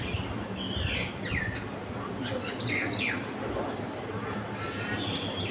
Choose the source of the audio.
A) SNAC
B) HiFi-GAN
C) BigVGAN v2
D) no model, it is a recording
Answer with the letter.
D